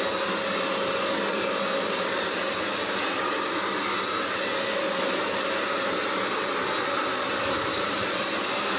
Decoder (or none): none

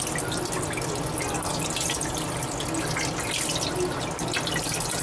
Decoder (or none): none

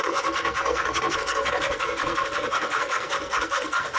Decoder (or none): codec, SNAC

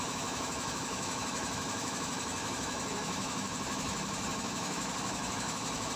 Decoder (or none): autoencoder, DAC-VAE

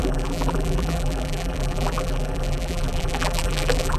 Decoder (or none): vocoder, BigVGAN v2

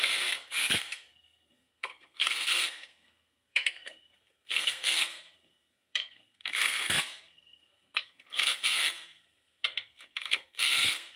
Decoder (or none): codec, SNAC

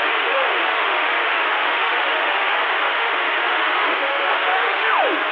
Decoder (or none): autoencoder, DAC-VAE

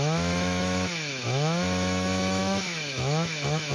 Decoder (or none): autoencoder, DAC-VAE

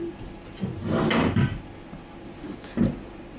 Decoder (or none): none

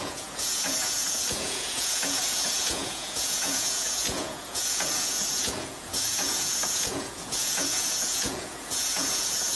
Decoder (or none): vocoder, Vocos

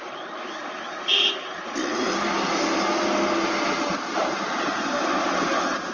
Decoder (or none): none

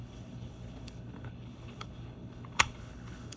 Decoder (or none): codec, HILCodec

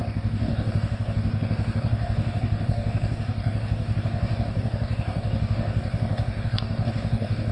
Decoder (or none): codec, DAC